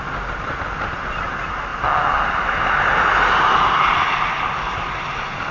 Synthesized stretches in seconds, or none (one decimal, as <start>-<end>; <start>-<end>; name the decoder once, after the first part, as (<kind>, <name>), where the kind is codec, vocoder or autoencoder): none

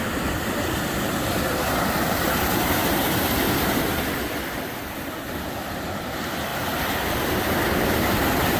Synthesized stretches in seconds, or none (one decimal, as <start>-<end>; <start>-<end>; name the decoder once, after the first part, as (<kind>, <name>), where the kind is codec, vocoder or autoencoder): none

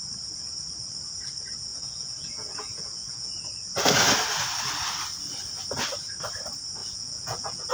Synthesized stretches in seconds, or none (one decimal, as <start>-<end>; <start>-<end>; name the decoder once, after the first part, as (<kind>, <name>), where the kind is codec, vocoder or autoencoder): 1.7-3.3 (vocoder, Vocos); 6.8-7.7

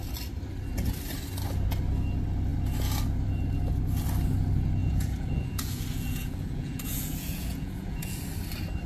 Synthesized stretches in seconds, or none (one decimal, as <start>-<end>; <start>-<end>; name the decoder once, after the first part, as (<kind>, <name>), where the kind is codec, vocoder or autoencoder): 4.8-8.2 (vocoder, Vocos)

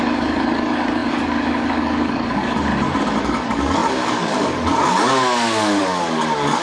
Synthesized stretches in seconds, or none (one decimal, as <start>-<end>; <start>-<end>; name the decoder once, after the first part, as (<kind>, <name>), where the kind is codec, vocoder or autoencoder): 0.0-2.7 (codec, DAC); 3.2-6.6

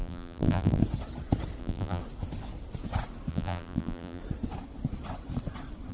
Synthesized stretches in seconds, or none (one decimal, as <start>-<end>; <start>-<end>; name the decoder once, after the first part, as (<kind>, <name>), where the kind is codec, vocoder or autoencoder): 0.0-0.8 (vocoder, BigVGAN v2); 1.6-2.0; 3.3-4.2

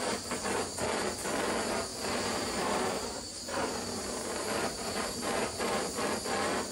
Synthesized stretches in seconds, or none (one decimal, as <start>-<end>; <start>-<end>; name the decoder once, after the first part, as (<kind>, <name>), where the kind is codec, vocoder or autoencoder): 1.9-5.9 (vocoder, BigVGAN v2)